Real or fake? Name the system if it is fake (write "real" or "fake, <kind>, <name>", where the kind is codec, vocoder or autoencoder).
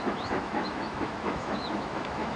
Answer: fake, autoencoder, DAC-VAE